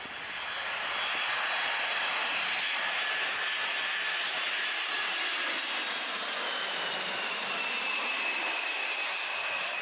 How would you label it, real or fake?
real